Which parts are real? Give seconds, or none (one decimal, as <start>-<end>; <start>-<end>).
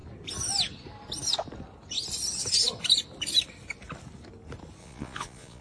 0.0-4.8